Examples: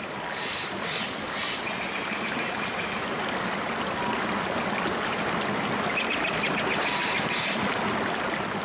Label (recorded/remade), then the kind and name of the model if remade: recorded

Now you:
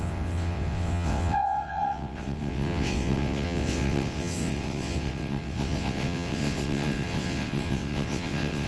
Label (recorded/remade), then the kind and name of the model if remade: remade, vocoder, WaveNeXt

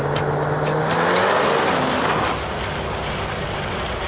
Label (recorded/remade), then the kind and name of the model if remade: recorded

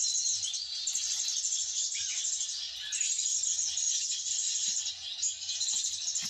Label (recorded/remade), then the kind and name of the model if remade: recorded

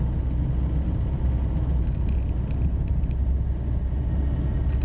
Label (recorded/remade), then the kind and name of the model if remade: recorded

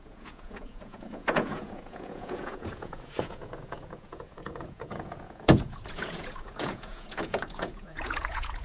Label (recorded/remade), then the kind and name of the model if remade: remade, vocoder, Vocos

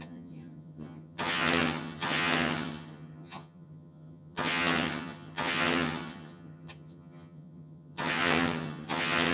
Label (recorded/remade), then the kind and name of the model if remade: remade, vocoder, HiFi-GAN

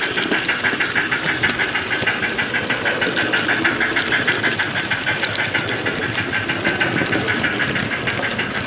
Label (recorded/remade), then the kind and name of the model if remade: recorded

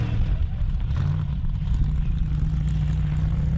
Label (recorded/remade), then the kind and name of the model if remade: recorded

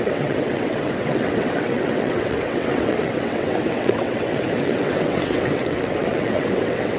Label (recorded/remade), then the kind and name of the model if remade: remade, vocoder, WaveNeXt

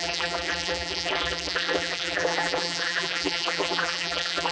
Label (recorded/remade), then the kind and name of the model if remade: remade, vocoder, BigVGAN v2